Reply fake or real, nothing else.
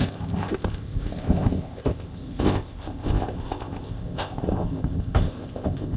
fake